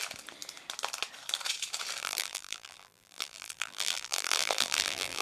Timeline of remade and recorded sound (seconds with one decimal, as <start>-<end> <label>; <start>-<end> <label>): 0.0-2.0 recorded; 2.0-5.2 remade